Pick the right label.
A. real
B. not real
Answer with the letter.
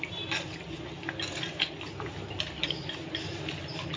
A